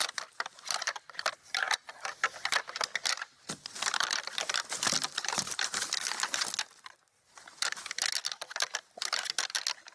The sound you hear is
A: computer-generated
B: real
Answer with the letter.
B